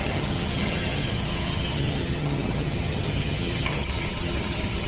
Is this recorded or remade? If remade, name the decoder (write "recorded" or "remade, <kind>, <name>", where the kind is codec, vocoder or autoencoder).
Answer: remade, vocoder, HiFi-GAN